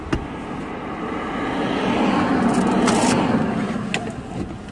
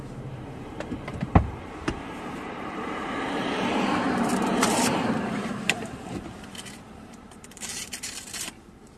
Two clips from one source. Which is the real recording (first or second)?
first